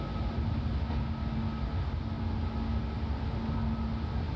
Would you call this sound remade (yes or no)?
no